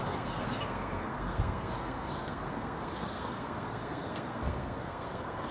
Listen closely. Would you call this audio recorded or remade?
remade